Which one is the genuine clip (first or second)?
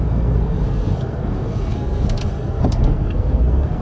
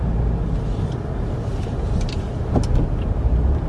second